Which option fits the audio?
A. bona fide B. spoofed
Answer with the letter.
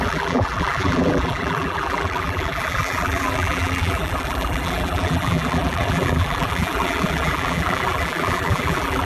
B